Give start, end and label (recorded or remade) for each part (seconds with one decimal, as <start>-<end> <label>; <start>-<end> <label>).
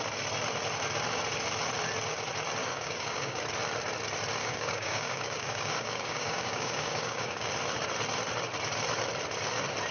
0.0-2.6 recorded; 2.6-3.4 remade; 3.4-4.4 recorded; 4.4-7.5 remade; 7.5-9.9 recorded